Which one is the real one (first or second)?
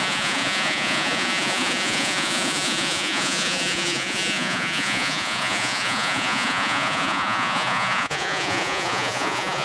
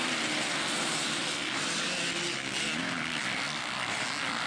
second